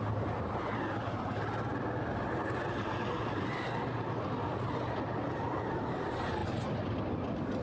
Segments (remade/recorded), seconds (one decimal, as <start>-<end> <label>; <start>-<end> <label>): 0.0-7.6 recorded

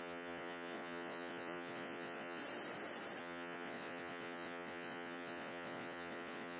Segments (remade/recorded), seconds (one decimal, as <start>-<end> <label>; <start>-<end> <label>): 0.0-2.4 remade; 2.4-3.2 recorded; 3.2-6.6 remade

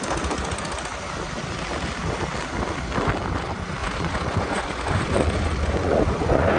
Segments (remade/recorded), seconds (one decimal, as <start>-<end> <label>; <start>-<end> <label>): 0.0-3.8 recorded; 3.8-6.6 remade

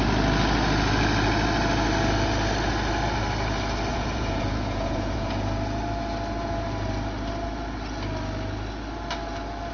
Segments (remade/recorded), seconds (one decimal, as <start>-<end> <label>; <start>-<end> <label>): 0.0-3.9 recorded; 3.9-5.3 remade; 5.3-9.7 recorded

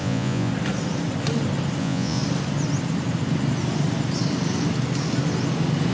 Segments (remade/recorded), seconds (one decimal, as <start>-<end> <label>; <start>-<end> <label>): 0.0-0.5 remade; 0.5-1.8 recorded; 1.8-2.2 remade; 2.2-5.9 recorded